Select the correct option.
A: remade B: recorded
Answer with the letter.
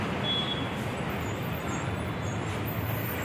B